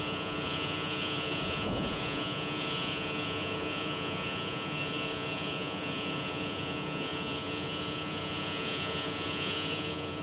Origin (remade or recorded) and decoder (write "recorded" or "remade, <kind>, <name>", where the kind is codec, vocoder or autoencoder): remade, vocoder, Vocos